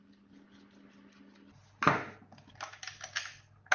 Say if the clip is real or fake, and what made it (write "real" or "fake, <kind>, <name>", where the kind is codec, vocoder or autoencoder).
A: real